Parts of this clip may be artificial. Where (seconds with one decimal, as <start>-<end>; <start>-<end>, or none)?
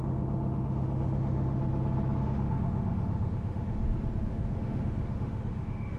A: 0.0-1.6; 2.2-3.8; 4.3-6.0